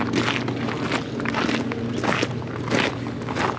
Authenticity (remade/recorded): recorded